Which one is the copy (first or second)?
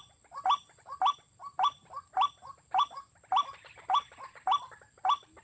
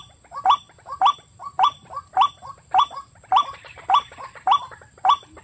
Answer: second